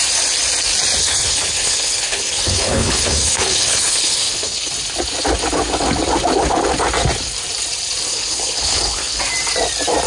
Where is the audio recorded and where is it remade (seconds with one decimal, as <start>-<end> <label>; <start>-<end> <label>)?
0.0-1.0 recorded; 1.0-4.7 remade; 4.7-8.1 recorded; 8.1-9.2 remade; 9.2-10.1 recorded